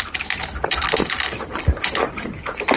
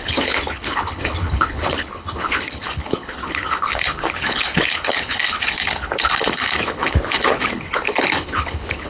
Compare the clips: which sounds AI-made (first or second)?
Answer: second